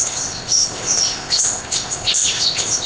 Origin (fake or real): fake